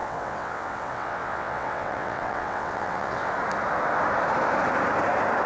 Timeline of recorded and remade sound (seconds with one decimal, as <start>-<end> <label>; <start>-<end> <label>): 0.0-3.3 remade; 3.3-5.5 recorded